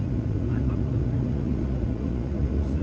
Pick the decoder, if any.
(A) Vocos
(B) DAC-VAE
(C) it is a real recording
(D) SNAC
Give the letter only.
A